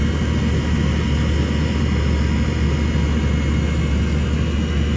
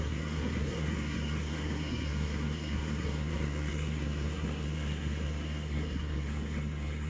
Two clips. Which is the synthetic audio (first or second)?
second